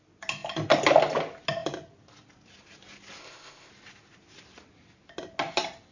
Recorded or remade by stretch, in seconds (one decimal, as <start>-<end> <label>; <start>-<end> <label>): 0.0-3.2 recorded; 3.2-3.7 remade; 3.7-5.9 recorded